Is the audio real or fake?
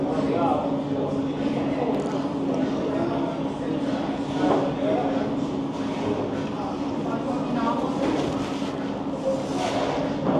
real